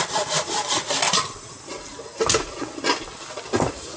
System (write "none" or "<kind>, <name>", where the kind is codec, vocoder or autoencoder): none